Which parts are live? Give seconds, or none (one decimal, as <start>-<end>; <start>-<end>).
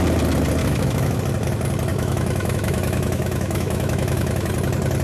0.0-0.6; 1.2-1.9; 4.5-5.0